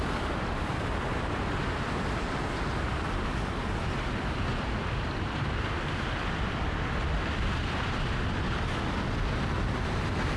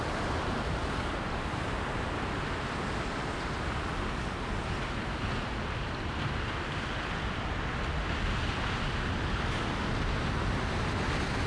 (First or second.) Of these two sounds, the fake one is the first